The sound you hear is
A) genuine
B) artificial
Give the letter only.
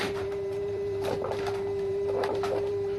B